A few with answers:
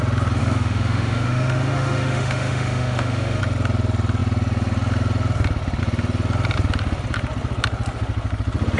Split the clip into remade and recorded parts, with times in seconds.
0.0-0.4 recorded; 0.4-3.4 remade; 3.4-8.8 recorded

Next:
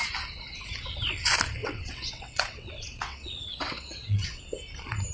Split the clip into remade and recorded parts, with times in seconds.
0.0-1.6 recorded; 1.6-4.4 remade; 4.4-5.1 recorded

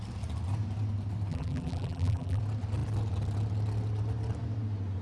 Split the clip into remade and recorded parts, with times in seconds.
0.0-1.3 recorded; 1.3-2.4 remade; 2.4-5.0 recorded

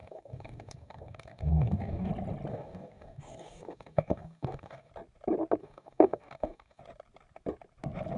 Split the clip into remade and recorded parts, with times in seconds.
0.0-2.1 remade; 2.1-2.5 recorded; 2.5-4.9 remade; 4.9-5.6 recorded; 5.6-6.8 remade; 6.8-8.2 recorded

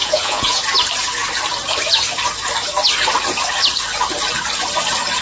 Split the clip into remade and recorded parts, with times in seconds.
0.0-0.6 remade; 0.6-5.2 recorded

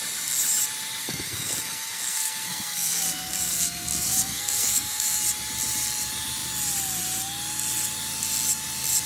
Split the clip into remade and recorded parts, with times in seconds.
0.0-1.0 recorded; 1.0-5.2 remade; 5.2-9.1 recorded